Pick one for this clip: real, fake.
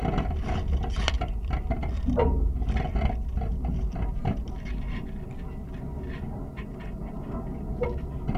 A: real